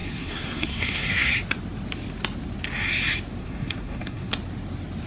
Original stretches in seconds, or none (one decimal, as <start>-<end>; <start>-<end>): 1.3-3.4; 4.3-5.1